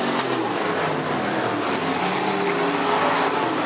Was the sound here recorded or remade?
recorded